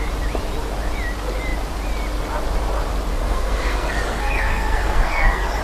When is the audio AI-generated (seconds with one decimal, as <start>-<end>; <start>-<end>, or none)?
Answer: 3.1-5.6